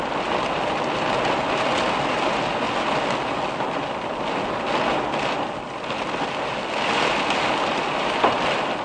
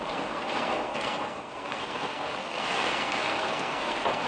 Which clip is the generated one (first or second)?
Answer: second